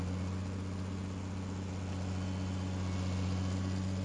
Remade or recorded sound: recorded